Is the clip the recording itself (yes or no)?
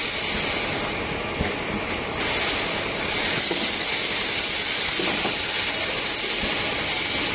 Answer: yes